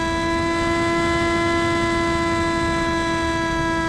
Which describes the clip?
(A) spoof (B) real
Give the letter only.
B